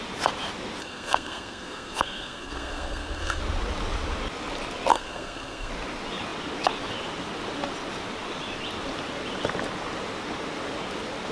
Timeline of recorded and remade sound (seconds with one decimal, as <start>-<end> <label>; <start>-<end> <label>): 0.0-0.8 recorded; 0.8-3.4 remade; 3.4-4.9 recorded; 4.9-5.7 remade; 5.7-11.3 recorded